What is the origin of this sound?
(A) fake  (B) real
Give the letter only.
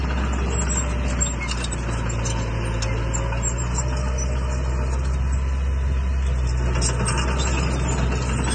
B